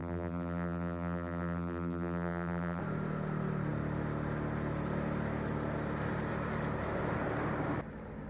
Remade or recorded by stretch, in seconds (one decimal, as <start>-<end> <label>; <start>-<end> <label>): 0.0-2.8 remade; 2.8-8.3 recorded